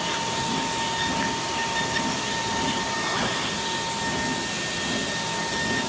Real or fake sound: real